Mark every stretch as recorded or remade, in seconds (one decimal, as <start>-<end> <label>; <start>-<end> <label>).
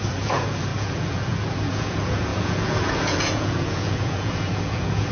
0.0-5.1 remade